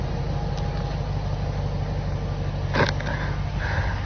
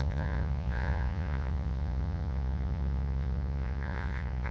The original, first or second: first